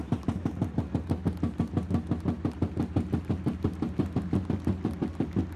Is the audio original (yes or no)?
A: yes